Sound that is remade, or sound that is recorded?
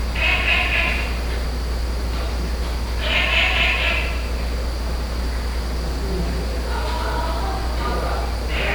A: recorded